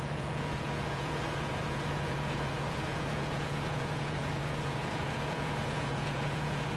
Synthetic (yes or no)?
yes